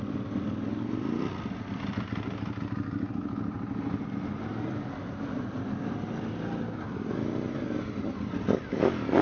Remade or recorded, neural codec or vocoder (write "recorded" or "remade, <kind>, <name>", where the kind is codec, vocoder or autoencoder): recorded